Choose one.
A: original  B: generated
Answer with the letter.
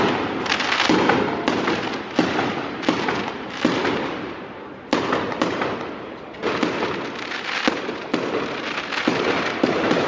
A